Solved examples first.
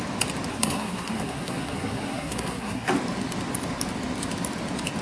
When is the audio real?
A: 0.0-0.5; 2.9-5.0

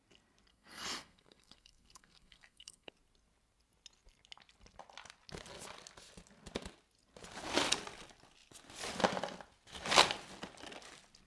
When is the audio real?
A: 0.0-0.5; 2.9-11.3

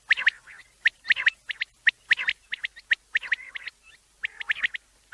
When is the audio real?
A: 0.0-5.1

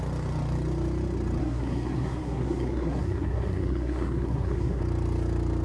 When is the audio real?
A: 0.0-1.4; 4.8-5.6

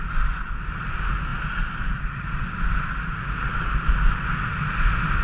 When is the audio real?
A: 0.0-5.2

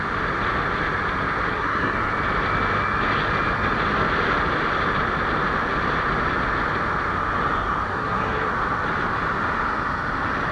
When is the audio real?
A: 0.0-1.5; 2.1-7.9; 8.5-10.5

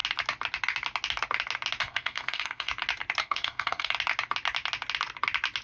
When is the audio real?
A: 0.0-1.8; 2.7-3.2; 3.9-5.6